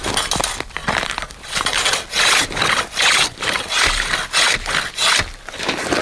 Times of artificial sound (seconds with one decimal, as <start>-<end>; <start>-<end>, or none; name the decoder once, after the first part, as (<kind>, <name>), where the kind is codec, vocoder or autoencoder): none